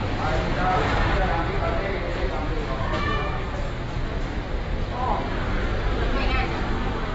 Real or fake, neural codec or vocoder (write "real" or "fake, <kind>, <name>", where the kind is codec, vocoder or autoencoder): real